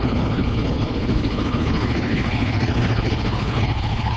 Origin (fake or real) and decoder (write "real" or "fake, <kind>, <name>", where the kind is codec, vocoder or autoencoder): fake, codec, HILCodec